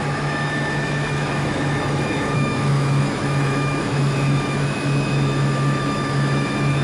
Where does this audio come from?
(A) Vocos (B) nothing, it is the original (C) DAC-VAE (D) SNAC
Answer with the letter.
C